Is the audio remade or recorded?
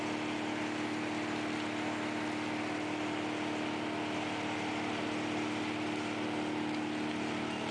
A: recorded